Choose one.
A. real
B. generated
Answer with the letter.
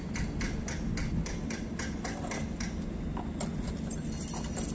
A